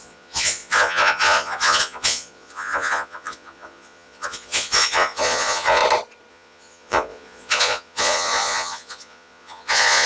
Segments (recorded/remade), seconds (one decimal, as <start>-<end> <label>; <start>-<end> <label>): 0.0-5.8 remade; 5.8-6.3 recorded; 6.3-10.1 remade